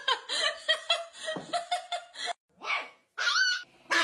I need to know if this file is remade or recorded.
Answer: recorded